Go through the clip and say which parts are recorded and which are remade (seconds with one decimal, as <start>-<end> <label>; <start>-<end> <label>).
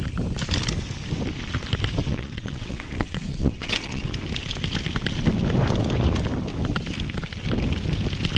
0.0-2.0 recorded; 2.0-4.1 remade; 4.1-8.4 recorded